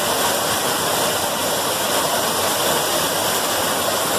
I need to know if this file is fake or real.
real